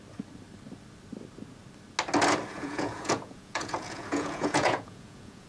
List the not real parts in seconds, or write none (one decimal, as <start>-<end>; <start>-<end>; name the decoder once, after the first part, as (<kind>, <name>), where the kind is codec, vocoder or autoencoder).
2.5-5.5 (vocoder, Vocos)